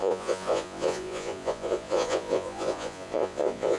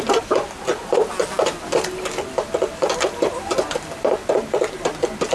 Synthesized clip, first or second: first